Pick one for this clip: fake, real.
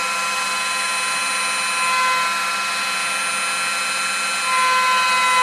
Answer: real